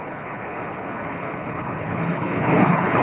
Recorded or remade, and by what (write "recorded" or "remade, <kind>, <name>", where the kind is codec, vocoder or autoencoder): remade, codec, HILCodec